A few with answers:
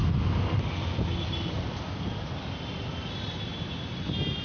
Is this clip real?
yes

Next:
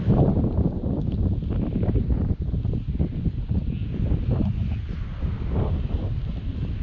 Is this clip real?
yes